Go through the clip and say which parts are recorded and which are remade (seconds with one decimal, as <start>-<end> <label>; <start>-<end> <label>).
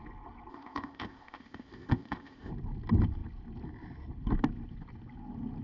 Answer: 0.0-0.5 recorded; 0.5-2.5 remade; 2.5-5.6 recorded